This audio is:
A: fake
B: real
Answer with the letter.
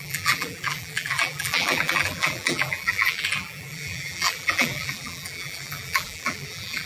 A